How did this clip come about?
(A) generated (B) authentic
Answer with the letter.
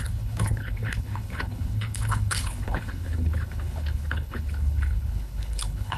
A